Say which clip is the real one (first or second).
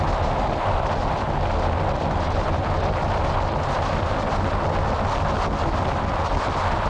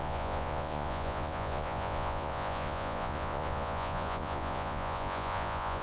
first